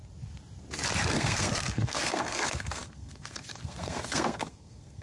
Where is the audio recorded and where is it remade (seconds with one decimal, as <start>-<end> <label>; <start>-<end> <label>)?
0.0-1.1 recorded; 1.1-5.0 remade